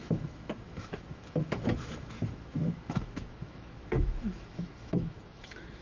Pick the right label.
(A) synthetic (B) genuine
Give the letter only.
A